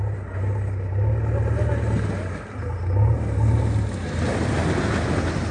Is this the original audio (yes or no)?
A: yes